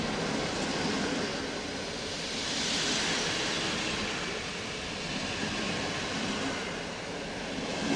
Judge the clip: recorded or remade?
recorded